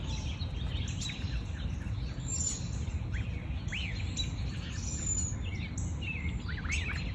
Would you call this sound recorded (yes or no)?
yes